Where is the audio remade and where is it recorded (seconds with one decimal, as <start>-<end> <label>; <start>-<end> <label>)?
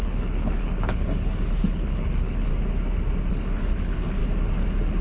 0.0-2.5 remade; 2.5-3.3 recorded; 3.3-4.2 remade; 4.2-5.0 recorded